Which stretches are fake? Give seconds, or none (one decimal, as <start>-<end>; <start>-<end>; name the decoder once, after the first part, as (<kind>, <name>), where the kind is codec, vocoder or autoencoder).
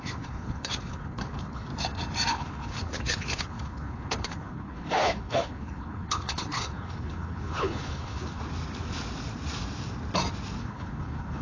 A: 0.0-1.7 (codec, HILCodec); 2.3-8.4; 10.6-11.4